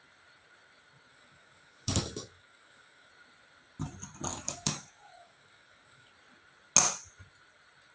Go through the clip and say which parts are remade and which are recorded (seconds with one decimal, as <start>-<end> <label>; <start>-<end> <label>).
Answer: 0.0-1.1 recorded; 1.1-3.1 remade; 3.1-4.3 recorded; 4.3-6.1 remade; 6.1-7.9 recorded